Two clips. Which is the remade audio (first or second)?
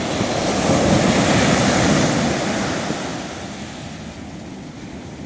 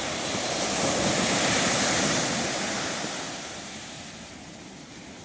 second